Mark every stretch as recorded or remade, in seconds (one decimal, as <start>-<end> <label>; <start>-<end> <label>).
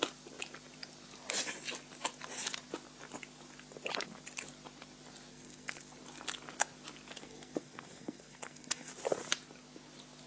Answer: 0.0-5.3 recorded; 5.3-5.8 remade; 5.8-7.2 recorded; 7.2-8.9 remade; 8.9-10.3 recorded